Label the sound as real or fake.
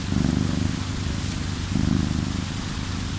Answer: real